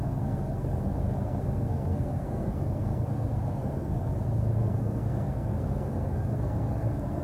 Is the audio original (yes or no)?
no